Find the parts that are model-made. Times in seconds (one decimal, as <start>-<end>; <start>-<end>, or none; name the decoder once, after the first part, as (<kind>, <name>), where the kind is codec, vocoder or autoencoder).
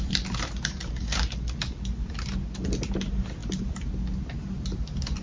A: none